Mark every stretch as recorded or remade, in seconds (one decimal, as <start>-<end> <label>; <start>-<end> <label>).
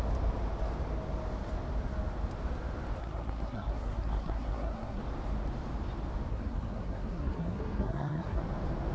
0.0-3.0 recorded; 3.0-5.0 remade; 5.0-6.3 recorded; 6.3-8.4 remade; 8.4-8.9 recorded